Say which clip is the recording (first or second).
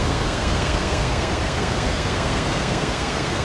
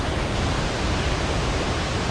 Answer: second